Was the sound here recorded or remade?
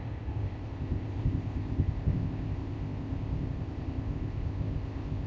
remade